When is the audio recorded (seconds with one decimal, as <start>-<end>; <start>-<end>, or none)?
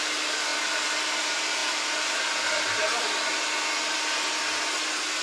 0.0-5.2